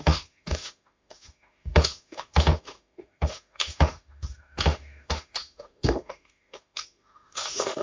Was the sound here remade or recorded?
remade